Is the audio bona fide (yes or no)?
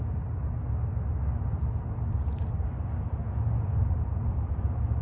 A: yes